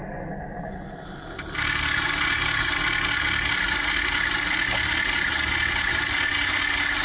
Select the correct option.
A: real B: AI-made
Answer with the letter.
A